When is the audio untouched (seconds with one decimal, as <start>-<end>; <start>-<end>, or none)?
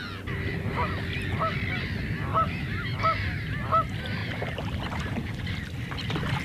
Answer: 0.0-2.3; 3.0-4.2; 5.4-6.4